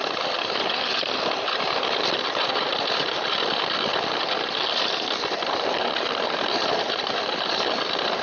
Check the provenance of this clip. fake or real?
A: real